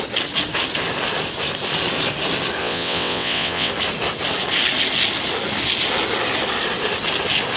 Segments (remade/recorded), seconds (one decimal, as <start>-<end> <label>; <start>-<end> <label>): 0.0-2.6 recorded; 2.6-3.7 remade; 3.7-7.6 recorded